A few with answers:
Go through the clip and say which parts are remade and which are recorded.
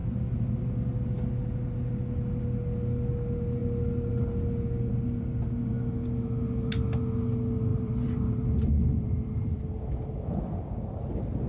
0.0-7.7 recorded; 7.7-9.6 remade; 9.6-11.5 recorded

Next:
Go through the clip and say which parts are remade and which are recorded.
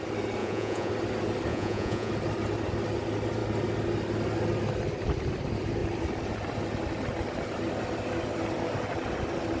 0.0-0.4 recorded; 0.4-0.9 remade; 0.9-1.5 recorded; 1.5-2.1 remade; 2.1-9.6 recorded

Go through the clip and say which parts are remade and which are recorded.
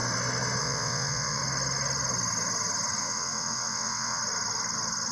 0.0-0.6 recorded; 0.6-1.4 remade; 1.4-3.0 recorded; 3.0-4.2 remade; 4.2-5.1 recorded